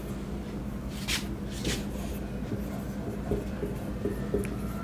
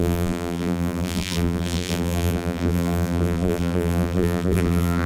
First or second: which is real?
first